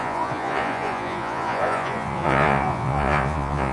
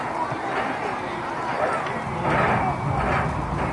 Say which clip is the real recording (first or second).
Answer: second